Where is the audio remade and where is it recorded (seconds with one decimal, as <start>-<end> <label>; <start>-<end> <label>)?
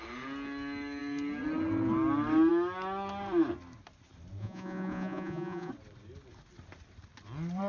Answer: 0.0-4.4 recorded; 4.4-5.7 remade; 5.7-7.7 recorded